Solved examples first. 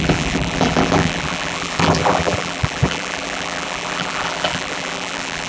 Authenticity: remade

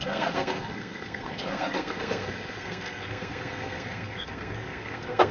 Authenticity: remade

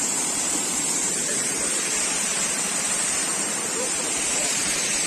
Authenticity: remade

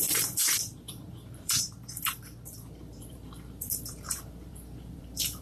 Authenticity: remade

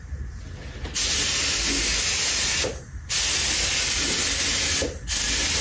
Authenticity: recorded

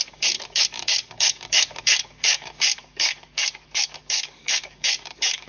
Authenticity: remade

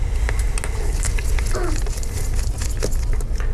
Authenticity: recorded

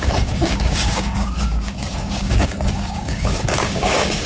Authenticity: remade